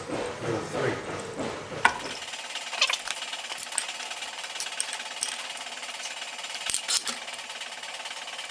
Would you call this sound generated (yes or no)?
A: no